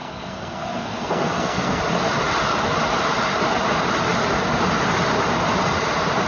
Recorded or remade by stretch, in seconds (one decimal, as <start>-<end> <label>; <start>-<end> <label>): 0.0-1.8 remade; 1.8-6.3 recorded